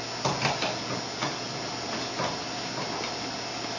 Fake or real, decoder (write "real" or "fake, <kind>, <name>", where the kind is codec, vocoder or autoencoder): real